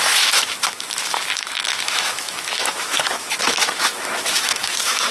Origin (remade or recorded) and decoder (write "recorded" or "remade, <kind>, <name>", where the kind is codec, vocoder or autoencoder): remade, autoencoder, DAC-VAE